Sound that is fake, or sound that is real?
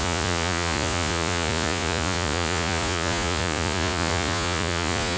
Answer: fake